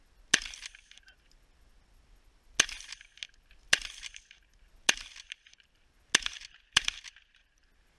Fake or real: real